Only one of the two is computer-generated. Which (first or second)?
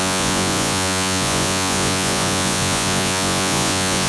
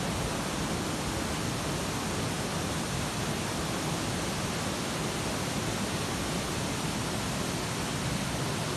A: first